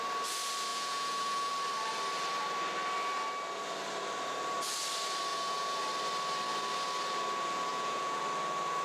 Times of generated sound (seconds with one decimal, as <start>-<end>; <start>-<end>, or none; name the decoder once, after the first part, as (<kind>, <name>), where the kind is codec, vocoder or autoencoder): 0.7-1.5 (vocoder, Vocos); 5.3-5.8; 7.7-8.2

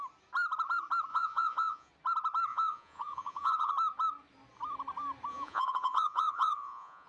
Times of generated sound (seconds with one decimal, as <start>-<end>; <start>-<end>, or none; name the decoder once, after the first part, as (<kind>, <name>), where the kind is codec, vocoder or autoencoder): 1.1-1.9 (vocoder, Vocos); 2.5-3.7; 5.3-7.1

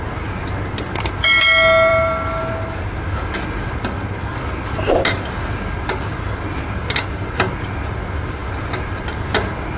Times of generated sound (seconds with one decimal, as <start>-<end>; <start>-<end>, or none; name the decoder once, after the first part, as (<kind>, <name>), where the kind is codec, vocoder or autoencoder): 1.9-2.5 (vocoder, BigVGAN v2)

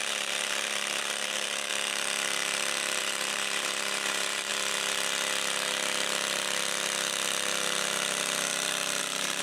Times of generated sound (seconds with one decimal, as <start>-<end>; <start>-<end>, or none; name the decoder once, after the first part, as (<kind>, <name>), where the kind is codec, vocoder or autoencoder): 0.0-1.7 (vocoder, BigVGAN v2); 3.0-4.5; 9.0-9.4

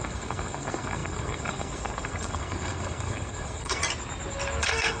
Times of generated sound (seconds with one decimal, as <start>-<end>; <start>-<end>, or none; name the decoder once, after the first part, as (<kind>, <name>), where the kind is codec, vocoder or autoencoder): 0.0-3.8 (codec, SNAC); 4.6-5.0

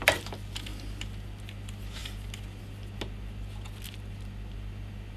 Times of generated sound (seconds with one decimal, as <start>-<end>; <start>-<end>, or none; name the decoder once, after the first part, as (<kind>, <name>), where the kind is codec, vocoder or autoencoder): none